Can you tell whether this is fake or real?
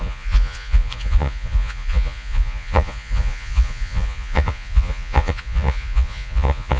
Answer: fake